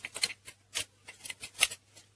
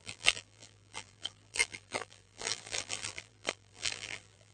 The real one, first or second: first